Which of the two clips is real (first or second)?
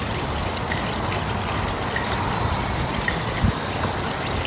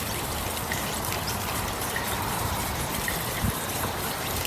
first